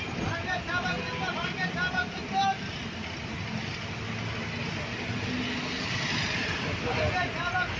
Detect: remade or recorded recorded